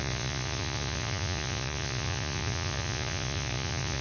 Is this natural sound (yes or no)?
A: no